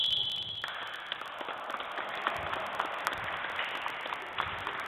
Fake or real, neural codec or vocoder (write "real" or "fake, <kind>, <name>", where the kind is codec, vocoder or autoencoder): real